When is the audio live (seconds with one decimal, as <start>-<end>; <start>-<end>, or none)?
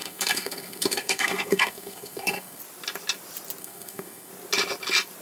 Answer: 2.6-3.6; 4.3-5.2